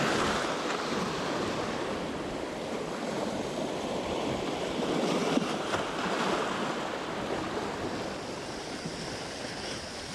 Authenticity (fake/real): real